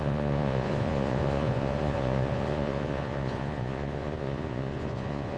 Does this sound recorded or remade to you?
remade